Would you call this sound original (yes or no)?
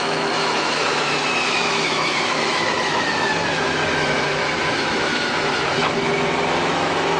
no